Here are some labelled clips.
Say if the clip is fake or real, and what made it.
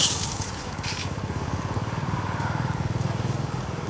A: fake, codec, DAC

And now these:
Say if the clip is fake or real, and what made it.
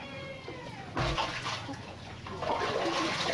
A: fake, vocoder, Vocos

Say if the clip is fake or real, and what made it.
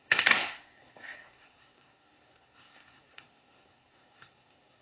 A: fake, codec, SNAC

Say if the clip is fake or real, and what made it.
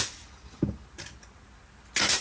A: real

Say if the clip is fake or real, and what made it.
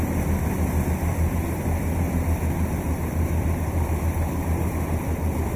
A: fake, vocoder, BigVGAN v2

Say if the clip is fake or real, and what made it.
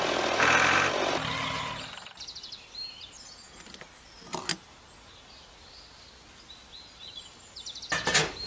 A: real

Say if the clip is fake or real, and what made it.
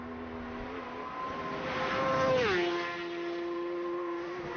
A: real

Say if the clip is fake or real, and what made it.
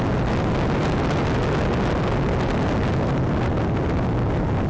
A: real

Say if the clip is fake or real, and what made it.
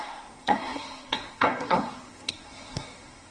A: fake, codec, SNAC